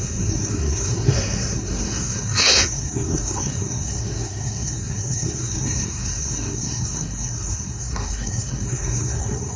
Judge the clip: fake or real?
fake